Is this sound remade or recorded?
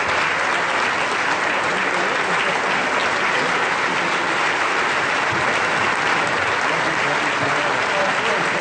recorded